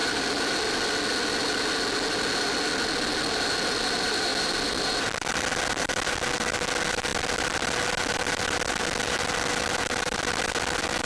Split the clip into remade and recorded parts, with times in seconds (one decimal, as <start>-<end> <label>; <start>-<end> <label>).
0.0-11.1 recorded